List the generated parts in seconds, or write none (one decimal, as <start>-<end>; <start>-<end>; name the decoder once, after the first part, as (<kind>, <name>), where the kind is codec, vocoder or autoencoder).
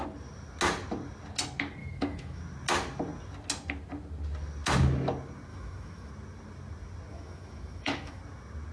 1.8-2.4 (autoencoder, DAC-VAE); 5.5-6.1; 7.1-8.2